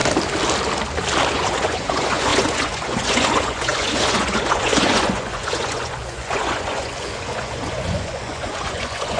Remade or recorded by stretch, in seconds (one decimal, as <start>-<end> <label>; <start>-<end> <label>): 0.0-1.3 recorded; 1.3-9.2 remade